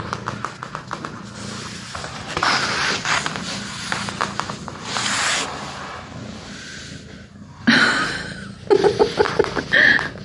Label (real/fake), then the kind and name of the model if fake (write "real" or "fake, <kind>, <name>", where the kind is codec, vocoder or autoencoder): real